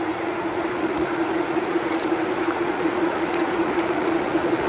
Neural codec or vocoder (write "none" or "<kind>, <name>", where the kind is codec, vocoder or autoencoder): vocoder, Vocos